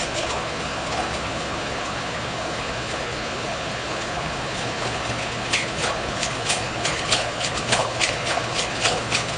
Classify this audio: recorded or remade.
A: remade